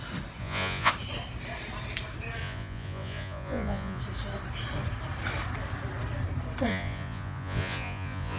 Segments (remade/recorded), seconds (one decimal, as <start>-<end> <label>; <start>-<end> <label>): 0.0-0.4 recorded; 0.4-0.9 remade; 0.9-2.4 recorded; 2.4-4.0 remade; 4.0-6.7 recorded; 6.7-8.4 remade